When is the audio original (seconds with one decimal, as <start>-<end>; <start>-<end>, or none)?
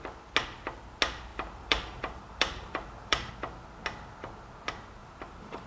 0.0-1.3; 3.3-5.0